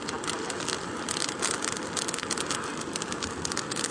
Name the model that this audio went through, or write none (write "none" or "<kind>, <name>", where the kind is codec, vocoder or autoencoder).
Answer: none